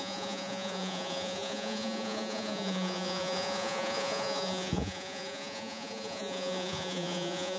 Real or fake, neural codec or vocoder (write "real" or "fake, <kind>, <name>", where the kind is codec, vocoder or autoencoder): fake, vocoder, Vocos